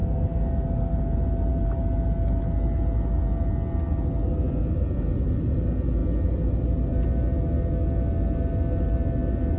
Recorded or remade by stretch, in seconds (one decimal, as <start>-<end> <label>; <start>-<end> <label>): 0.0-9.6 recorded

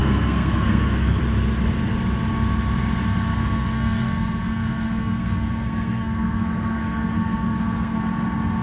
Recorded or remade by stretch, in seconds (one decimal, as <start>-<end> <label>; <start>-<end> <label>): 0.0-1.2 remade; 1.2-3.3 recorded; 3.3-8.0 remade; 8.0-8.6 recorded

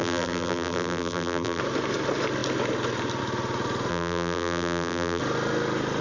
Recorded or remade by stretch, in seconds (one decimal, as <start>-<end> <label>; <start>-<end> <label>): 0.0-1.6 remade; 1.6-3.9 recorded; 3.9-5.2 remade; 5.2-6.0 recorded

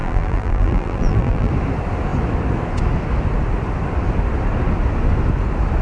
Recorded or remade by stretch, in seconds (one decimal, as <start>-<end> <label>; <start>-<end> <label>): 0.0-1.5 remade; 1.5-5.8 recorded

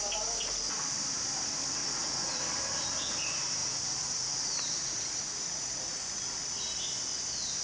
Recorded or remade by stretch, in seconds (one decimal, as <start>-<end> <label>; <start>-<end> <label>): 0.0-1.8 recorded; 1.8-2.4 remade; 2.4-3.6 recorded; 3.6-6.2 remade; 6.2-7.6 recorded

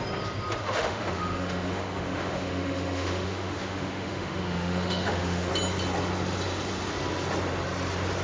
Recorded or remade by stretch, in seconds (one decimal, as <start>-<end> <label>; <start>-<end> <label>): 0.0-0.6 recorded; 0.6-5.5 remade; 5.5-8.2 recorded